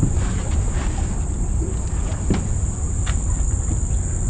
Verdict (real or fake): real